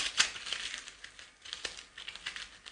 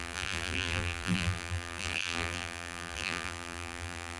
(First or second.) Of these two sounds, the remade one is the second